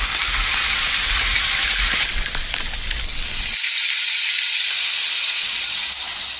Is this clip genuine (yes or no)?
yes